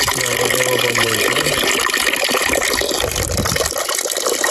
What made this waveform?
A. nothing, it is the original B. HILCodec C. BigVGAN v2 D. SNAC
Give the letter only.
A